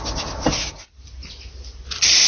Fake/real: real